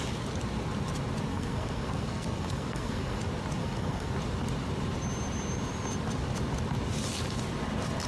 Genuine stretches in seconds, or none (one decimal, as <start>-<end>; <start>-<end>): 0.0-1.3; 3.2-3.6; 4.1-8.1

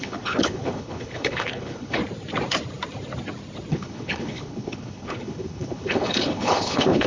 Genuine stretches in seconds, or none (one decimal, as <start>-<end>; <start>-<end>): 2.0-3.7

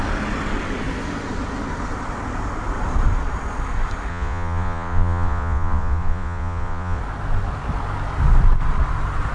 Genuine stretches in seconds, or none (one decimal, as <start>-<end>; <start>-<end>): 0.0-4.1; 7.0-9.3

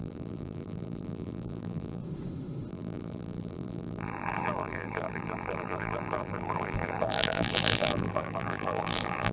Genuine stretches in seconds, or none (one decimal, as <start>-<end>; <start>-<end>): 2.0-2.7